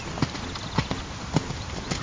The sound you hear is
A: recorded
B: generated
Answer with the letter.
A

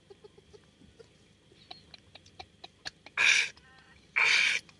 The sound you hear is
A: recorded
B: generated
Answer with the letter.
A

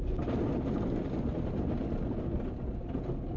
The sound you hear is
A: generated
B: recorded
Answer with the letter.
B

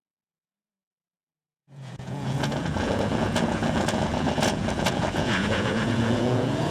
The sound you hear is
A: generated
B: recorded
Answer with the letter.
A